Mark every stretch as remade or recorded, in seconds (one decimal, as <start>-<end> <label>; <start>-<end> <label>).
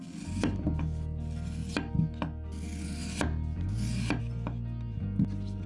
0.0-5.7 recorded